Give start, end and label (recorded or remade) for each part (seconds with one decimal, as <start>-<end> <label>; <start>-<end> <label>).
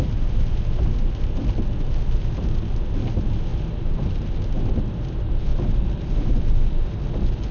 0.0-5.5 recorded; 5.5-6.4 remade; 6.4-7.5 recorded